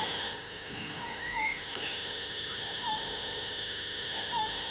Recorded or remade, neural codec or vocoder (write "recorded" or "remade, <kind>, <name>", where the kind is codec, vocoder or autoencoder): remade, autoencoder, DAC-VAE